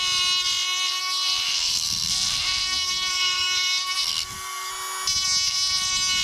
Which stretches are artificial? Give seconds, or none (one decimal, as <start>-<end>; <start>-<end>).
1.0-4.7